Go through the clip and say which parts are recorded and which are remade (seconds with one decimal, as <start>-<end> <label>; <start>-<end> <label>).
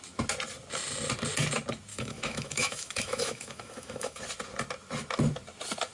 0.0-1.9 recorded; 1.9-4.2 remade; 4.2-5.9 recorded